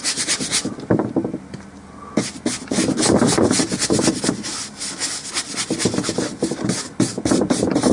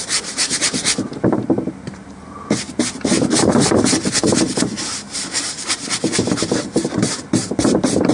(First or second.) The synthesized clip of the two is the second